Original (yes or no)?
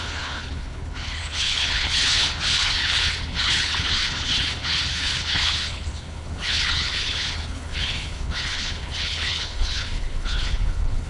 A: no